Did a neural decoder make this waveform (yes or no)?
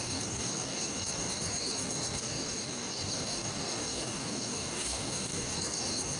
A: yes